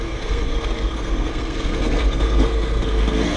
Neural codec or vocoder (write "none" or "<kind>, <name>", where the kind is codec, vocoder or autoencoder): codec, SNAC